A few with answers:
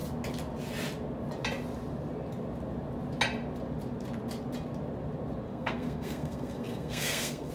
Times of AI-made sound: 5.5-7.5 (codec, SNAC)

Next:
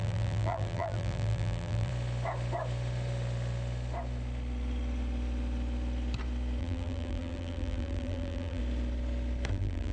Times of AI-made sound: 0.0-1.9 (vocoder, BigVGAN v2); 6.6-8.6; 9.5-9.9

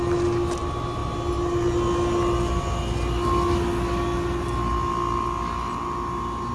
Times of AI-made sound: none

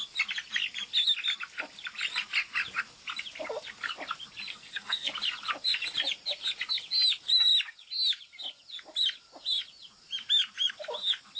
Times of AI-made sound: 4.5-5.1 (codec, SNAC)

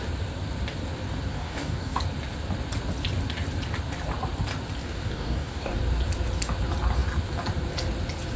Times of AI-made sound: 1.3-2.0 (codec, DAC); 4.8-5.8